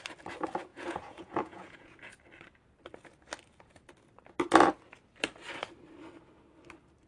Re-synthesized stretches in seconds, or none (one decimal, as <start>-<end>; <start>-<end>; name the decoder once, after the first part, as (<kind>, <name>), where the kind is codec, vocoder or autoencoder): 0.7-2.0 (vocoder, Vocos)